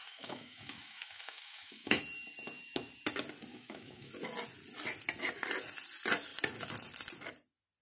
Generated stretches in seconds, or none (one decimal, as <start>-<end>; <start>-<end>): 0.0-2.0; 3.5-4.1